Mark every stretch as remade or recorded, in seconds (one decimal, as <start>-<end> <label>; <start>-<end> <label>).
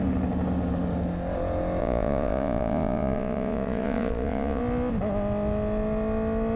0.0-1.8 recorded; 1.8-4.6 remade; 4.6-6.6 recorded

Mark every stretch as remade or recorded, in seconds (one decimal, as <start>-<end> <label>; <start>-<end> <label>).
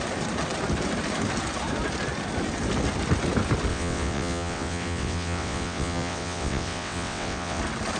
0.0-3.7 recorded; 3.7-7.6 remade; 7.6-8.0 recorded